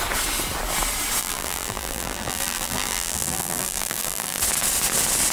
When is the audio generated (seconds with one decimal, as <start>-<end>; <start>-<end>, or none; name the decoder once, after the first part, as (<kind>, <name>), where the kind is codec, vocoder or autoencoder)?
1.2-4.4 (vocoder, BigVGAN v2)